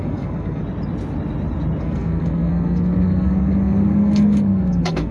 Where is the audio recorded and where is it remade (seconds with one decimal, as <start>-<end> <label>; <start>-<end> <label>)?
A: 0.0-0.6 remade; 0.6-1.8 recorded; 1.8-5.1 remade